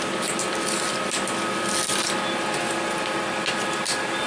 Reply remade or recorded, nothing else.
recorded